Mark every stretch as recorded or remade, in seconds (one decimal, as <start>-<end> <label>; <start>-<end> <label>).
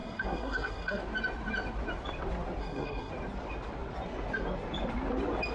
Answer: 0.0-1.0 remade; 1.0-2.6 recorded; 2.6-3.1 remade; 3.1-5.5 recorded